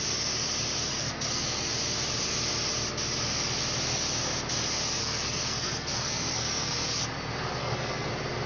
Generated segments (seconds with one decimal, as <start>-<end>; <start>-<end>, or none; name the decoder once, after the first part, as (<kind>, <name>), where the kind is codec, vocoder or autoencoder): 0.9-1.7 (codec, SNAC); 5.0-7.0; 7.6-8.1